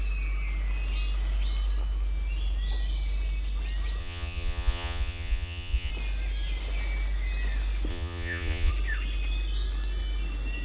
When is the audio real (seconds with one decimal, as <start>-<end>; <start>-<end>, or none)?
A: 0.0-4.0; 5.9-7.9; 8.7-10.6